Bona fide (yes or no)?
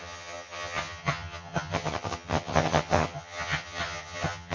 no